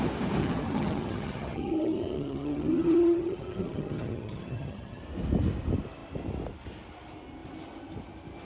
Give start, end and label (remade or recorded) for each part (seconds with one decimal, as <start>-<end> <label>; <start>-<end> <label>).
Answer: 0.0-0.4 recorded; 0.4-5.0 remade; 5.0-8.4 recorded